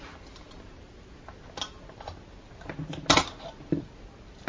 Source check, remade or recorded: recorded